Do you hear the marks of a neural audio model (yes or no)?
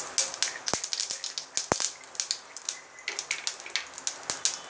no